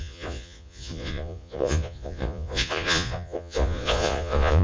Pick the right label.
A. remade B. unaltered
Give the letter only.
A